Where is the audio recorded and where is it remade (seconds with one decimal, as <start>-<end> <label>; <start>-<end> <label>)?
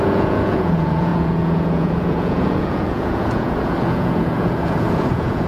0.0-5.5 remade